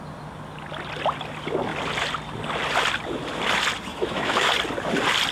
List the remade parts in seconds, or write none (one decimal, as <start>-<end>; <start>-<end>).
3.9-4.5